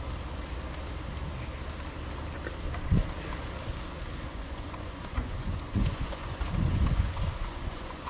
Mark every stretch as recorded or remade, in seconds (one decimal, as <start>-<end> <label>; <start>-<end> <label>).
0.0-4.3 recorded; 4.3-8.1 remade